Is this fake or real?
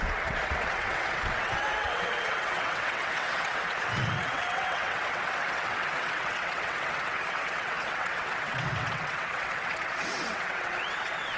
fake